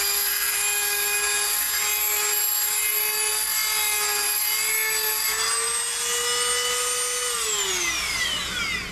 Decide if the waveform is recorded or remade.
recorded